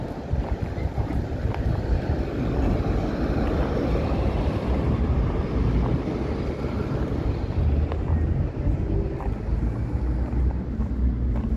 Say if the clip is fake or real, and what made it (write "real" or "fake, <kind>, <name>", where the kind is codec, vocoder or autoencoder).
real